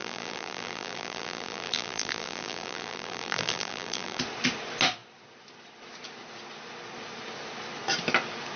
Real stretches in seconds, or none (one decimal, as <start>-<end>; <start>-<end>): 4.2-8.6